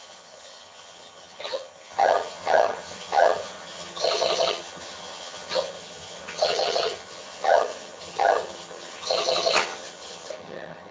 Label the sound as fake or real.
fake